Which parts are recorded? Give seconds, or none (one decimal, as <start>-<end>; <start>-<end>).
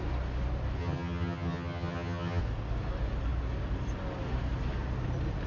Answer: 0.0-0.8; 2.4-5.5